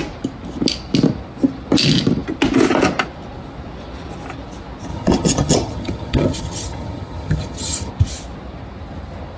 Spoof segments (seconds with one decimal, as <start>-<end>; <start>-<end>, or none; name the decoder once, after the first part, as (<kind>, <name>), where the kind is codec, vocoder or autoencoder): 4.9-7.9 (vocoder, HiFi-GAN)